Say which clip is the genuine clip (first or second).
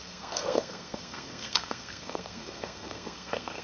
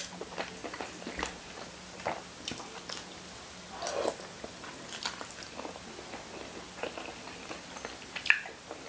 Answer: second